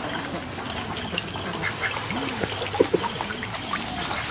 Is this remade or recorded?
recorded